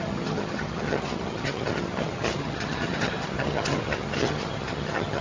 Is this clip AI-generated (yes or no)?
yes